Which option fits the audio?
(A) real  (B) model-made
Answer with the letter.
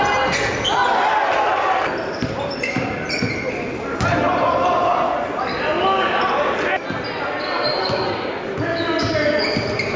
A